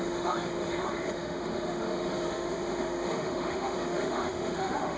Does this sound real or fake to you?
fake